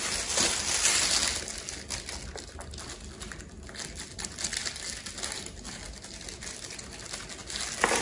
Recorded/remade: recorded